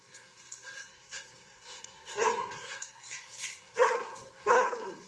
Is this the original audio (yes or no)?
no